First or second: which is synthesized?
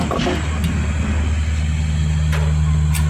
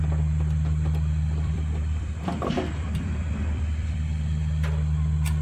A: second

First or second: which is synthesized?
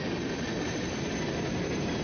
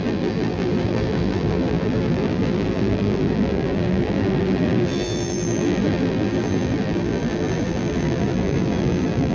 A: second